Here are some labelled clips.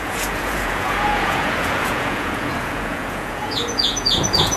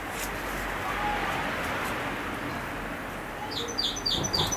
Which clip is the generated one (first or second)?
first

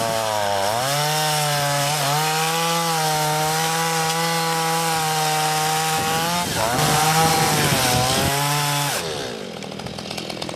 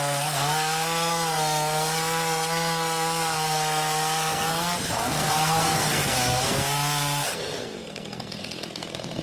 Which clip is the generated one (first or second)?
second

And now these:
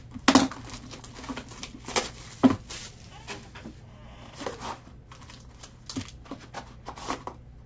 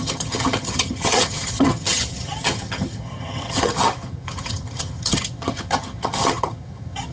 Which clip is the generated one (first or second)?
second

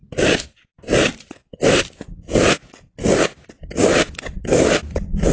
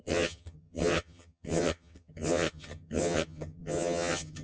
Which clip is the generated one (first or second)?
second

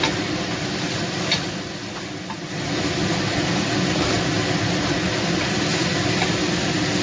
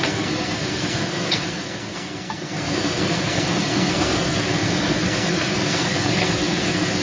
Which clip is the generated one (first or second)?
second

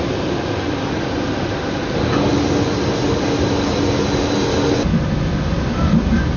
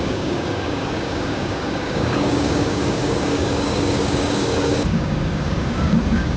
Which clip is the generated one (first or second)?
second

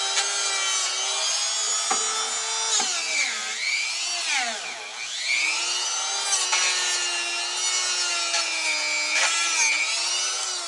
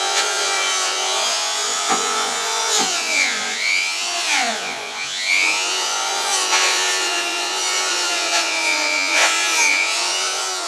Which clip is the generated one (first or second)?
second